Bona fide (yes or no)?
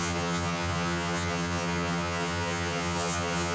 no